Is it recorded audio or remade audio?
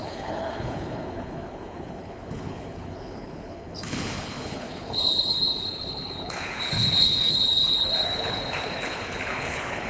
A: remade